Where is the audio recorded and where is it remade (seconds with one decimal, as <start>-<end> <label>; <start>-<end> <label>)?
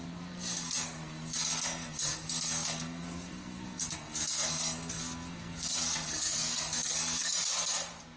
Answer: 0.0-7.4 remade; 7.4-8.2 recorded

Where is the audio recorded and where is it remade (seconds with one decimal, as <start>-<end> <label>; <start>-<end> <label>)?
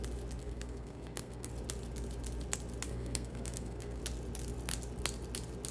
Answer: 0.0-0.4 recorded; 0.4-1.5 remade; 1.5-2.9 recorded; 2.9-4.0 remade; 4.0-5.7 recorded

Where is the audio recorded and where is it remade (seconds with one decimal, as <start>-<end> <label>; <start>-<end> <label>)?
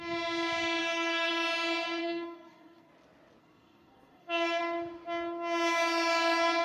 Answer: 0.0-0.8 recorded; 0.8-1.3 remade; 1.3-2.0 recorded; 2.0-2.9 remade; 2.9-3.4 recorded; 3.4-4.6 remade; 4.6-6.6 recorded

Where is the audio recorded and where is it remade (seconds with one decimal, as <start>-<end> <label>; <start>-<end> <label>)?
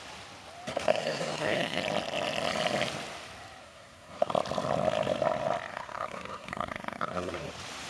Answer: 0.0-0.7 recorded; 0.7-1.8 remade; 1.8-3.6 recorded; 3.6-4.3 remade; 4.3-5.7 recorded; 5.7-7.5 remade; 7.5-7.9 recorded